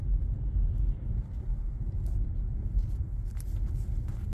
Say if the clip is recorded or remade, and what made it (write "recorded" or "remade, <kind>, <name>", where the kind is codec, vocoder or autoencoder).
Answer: recorded